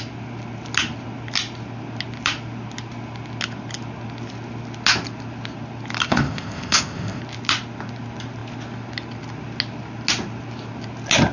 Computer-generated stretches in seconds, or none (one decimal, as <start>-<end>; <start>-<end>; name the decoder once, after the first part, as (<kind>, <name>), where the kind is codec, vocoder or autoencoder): 6.1-7.2 (codec, ZipCodec)